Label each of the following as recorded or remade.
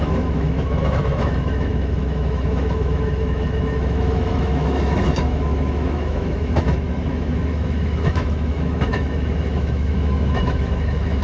remade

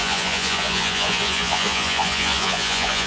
remade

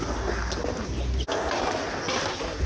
recorded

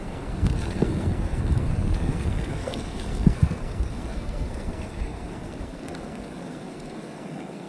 remade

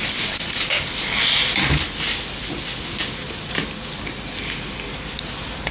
recorded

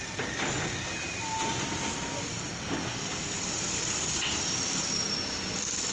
recorded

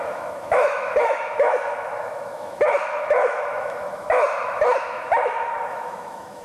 remade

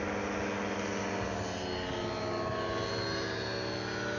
recorded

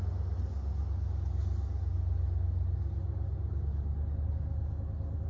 recorded